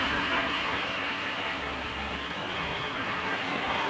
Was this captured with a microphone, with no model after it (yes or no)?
no